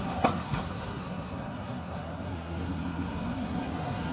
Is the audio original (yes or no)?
no